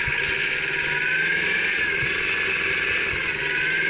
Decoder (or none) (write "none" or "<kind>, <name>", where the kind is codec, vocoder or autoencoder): none